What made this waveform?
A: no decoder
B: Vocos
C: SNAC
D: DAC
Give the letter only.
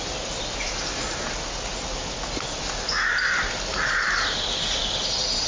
A